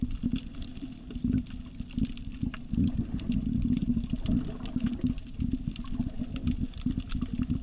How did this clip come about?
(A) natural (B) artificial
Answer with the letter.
B